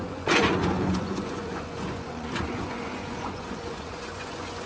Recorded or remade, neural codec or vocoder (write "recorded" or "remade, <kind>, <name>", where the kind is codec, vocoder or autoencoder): remade, vocoder, Vocos